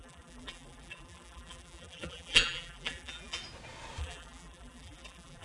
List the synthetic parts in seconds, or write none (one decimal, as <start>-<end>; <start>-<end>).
0.0-3.4; 4.0-5.4